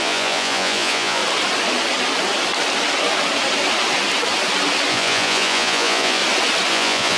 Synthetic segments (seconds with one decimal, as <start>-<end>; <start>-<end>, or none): 0.0-1.2; 4.9-6.2; 6.7-7.2